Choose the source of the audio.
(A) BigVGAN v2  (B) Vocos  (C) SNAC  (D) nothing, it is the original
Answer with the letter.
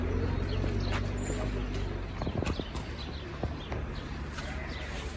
D